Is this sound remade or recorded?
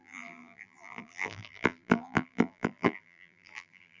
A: remade